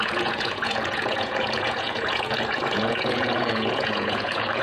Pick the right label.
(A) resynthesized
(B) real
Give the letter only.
A